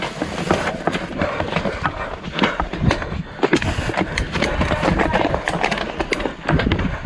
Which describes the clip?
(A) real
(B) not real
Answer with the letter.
A